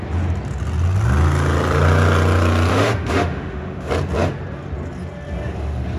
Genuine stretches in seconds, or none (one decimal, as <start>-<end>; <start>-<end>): 0.0-2.7; 3.9-6.0